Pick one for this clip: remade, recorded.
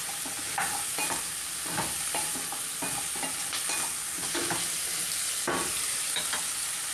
recorded